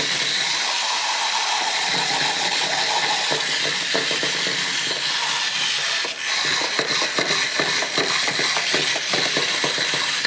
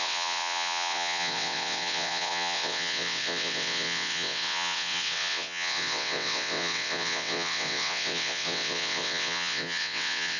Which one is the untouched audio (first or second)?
first